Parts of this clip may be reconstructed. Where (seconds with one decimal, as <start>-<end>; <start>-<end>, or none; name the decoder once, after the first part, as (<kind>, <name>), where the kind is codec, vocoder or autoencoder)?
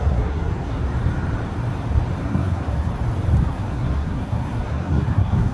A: 0.0-0.8 (codec, SNAC); 2.2-2.9; 3.4-5.5